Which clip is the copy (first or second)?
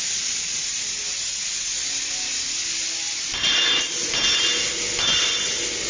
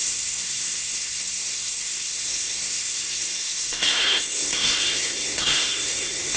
second